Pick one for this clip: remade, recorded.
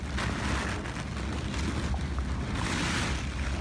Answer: recorded